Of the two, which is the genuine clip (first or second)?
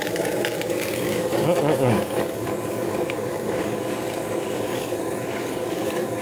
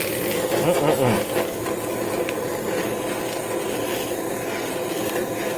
second